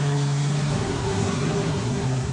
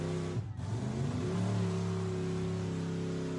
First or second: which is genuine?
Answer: second